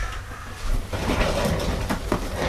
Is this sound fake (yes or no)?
yes